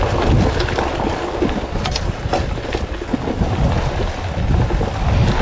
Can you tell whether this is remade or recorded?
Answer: recorded